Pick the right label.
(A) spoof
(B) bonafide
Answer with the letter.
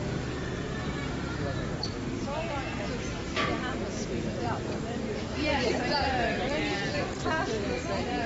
B